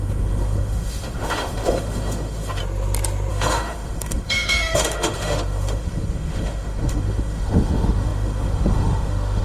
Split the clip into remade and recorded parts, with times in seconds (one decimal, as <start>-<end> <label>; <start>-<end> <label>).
0.0-2.6 remade; 2.6-3.3 recorded; 3.3-9.4 remade